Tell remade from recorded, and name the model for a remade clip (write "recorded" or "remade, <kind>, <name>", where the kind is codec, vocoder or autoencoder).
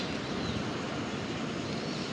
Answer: recorded